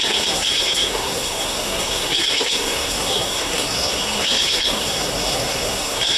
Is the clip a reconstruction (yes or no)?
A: yes